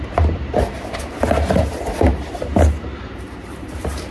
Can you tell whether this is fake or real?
fake